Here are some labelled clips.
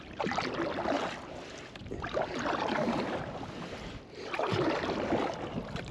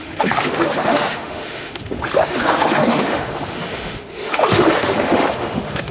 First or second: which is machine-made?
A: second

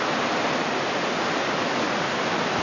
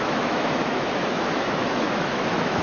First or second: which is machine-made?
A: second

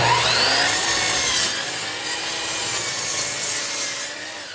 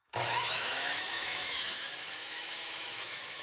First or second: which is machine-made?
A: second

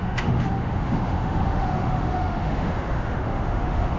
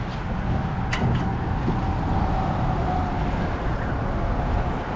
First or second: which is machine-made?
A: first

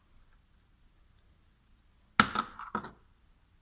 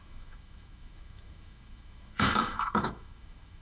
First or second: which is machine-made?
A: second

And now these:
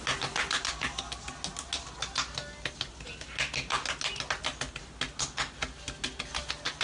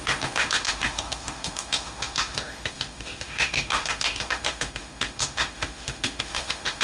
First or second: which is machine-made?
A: second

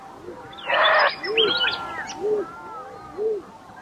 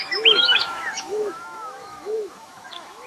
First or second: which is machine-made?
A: second